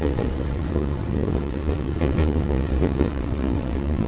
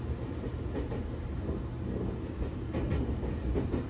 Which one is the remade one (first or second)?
first